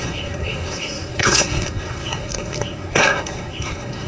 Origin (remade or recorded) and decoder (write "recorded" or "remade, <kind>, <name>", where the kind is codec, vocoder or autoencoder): remade, codec, SNAC